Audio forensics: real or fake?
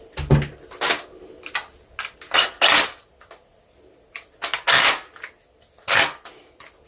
real